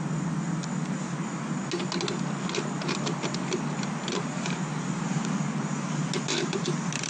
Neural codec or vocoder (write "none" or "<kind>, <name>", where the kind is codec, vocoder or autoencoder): none